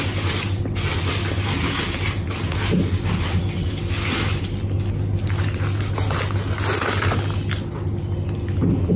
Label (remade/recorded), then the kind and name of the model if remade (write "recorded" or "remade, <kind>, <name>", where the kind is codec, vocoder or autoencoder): recorded